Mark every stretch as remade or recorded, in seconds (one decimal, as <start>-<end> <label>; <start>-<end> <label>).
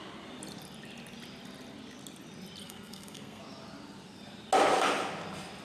0.0-2.6 recorded; 2.6-3.4 remade; 3.4-5.6 recorded